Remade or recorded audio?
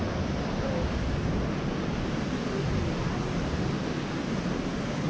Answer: recorded